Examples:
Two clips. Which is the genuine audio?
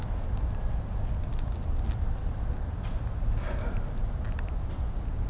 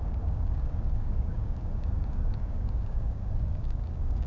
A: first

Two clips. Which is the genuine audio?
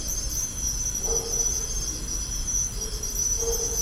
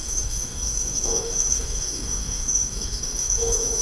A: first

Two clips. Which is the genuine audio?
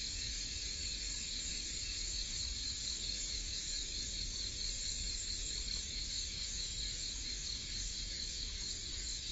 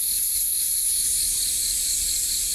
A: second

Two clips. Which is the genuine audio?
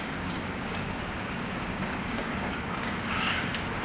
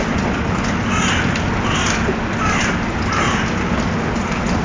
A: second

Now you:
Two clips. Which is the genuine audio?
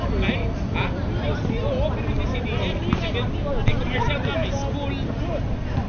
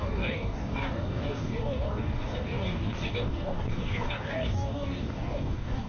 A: first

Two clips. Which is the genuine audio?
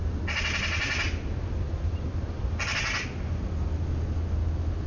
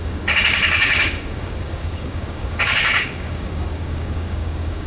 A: first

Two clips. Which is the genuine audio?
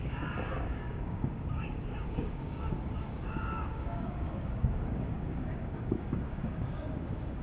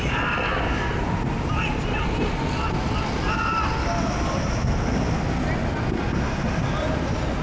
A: second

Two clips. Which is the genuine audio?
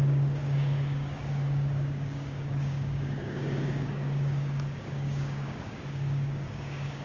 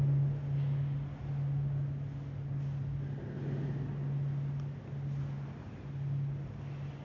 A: second